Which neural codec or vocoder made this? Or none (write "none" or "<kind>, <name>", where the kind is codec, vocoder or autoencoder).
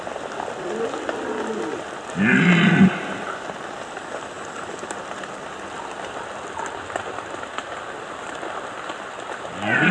none